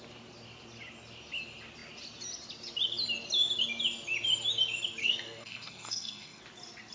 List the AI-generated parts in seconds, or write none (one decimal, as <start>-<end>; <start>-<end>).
5.0-6.4